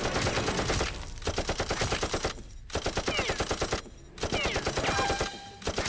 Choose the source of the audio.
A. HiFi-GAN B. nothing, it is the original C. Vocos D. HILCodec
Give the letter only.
B